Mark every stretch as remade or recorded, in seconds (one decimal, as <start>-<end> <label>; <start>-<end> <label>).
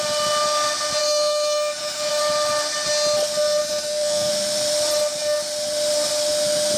0.0-1.0 recorded; 1.0-2.1 remade; 2.1-3.6 recorded; 3.6-4.3 remade; 4.3-6.8 recorded